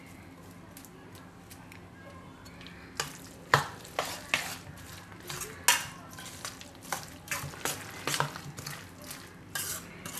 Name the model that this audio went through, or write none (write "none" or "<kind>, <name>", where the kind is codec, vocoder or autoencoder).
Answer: none